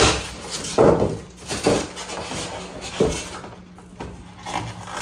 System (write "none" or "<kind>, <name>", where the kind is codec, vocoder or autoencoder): none